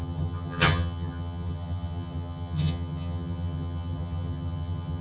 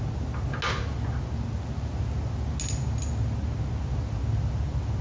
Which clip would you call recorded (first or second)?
second